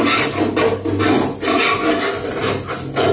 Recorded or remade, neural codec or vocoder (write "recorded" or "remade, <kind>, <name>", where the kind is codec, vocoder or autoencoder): recorded